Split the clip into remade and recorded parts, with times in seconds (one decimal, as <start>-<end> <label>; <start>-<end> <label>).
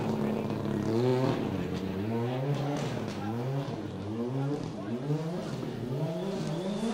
0.0-6.9 recorded